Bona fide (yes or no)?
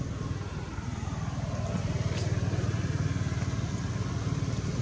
yes